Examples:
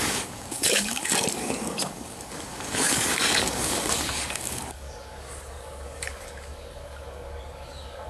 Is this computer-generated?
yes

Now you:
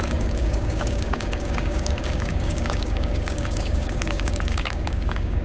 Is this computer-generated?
yes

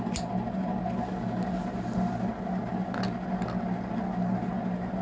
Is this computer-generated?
no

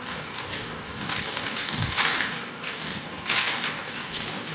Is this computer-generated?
yes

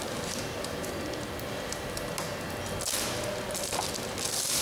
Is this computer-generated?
no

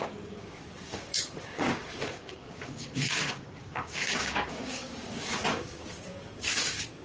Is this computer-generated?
yes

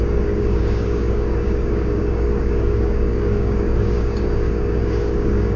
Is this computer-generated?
yes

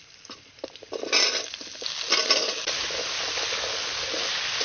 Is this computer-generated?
no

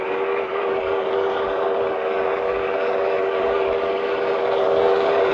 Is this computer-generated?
yes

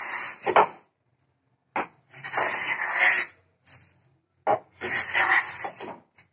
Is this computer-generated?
no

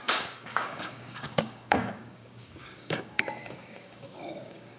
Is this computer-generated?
yes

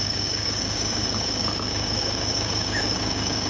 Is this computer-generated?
yes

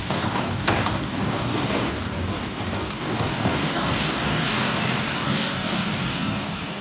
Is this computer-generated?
yes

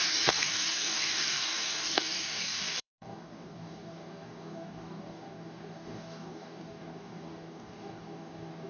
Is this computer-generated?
yes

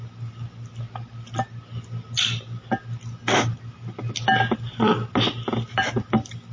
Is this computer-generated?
no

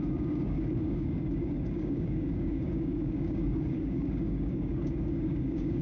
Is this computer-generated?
yes